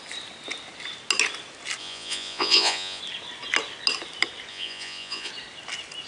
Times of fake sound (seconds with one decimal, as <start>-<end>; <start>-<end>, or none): 1.8-3.0; 4.5-5.3